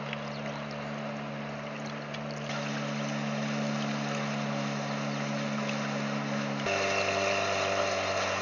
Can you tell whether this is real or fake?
real